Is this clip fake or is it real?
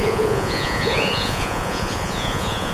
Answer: fake